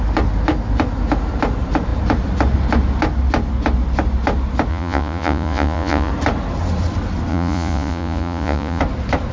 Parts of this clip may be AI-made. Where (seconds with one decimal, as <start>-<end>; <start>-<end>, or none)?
4.7-6.1; 7.3-8.8